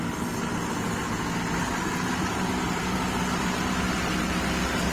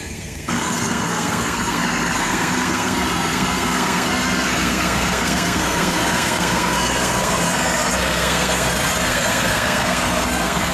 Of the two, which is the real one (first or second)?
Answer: first